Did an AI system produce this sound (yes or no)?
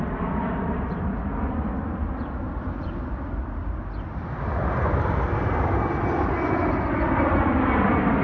no